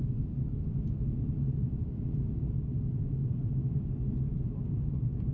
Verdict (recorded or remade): recorded